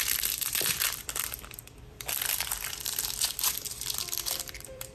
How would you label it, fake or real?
fake